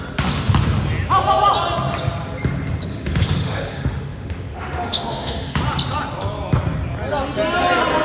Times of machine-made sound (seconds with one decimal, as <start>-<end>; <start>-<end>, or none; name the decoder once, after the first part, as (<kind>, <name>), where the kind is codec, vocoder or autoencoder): 2.9-5.6 (autoencoder, DAC-VAE)